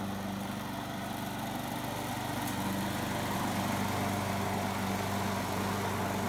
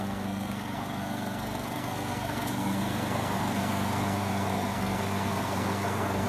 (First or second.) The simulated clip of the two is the second